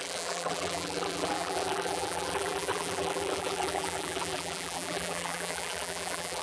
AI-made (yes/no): yes